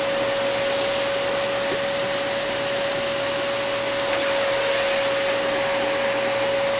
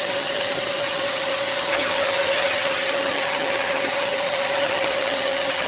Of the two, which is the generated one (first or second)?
second